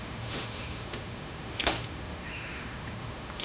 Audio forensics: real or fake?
fake